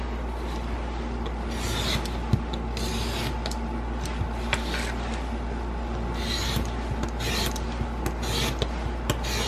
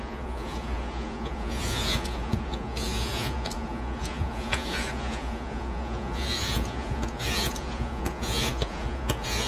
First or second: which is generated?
second